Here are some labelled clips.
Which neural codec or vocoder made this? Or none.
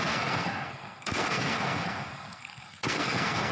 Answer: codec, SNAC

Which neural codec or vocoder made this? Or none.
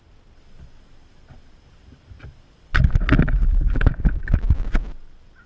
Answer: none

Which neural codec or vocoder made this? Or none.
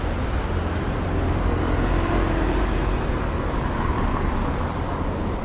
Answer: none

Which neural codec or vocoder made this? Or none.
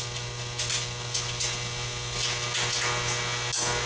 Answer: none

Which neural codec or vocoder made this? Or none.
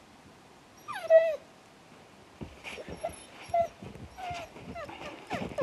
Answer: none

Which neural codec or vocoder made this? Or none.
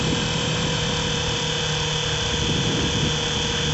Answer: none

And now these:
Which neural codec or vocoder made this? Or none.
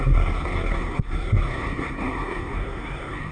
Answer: codec, SNAC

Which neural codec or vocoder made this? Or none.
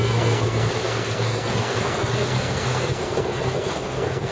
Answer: codec, SNAC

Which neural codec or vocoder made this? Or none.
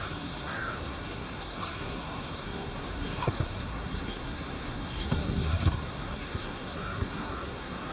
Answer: codec, SNAC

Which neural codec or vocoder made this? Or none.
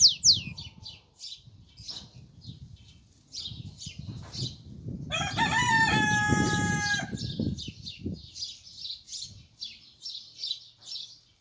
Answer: none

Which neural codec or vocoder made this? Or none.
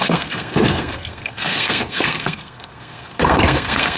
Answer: codec, SNAC